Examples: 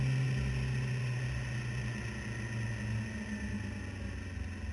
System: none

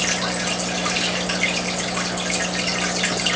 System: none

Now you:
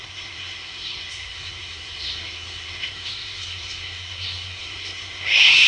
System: codec, SNAC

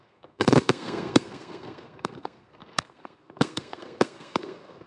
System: codec, SNAC